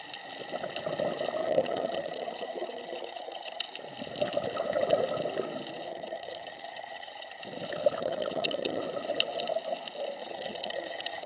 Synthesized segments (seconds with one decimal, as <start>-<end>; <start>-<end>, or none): 1.4-3.6; 5.9-7.4; 8.0-8.8; 10.2-11.3